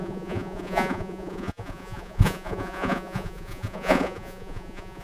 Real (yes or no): no